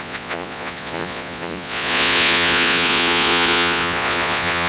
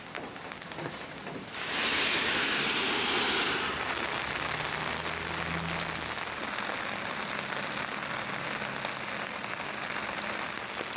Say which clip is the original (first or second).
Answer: second